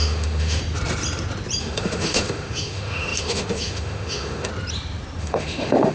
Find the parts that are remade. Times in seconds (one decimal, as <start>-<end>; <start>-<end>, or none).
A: 0.0-0.6; 1.6-4.5; 5.2-5.9